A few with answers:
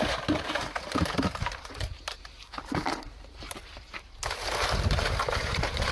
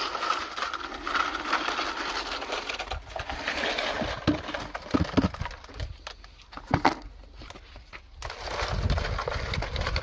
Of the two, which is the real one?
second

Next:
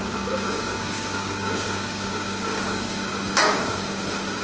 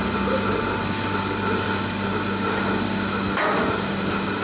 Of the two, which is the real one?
second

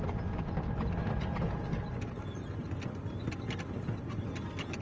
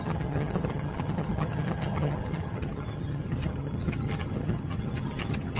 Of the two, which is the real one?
first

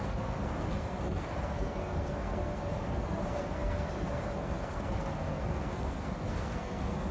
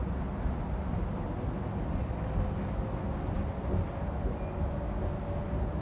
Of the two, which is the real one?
second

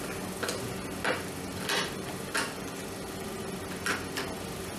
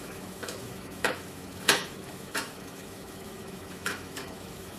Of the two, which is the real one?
first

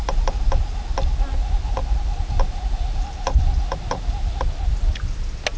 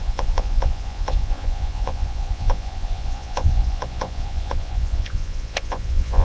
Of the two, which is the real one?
first